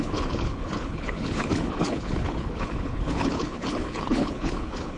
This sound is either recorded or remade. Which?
remade